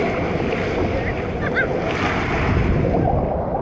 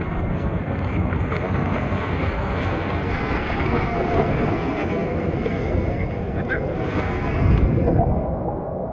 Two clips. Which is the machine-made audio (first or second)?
second